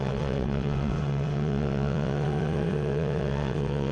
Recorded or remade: remade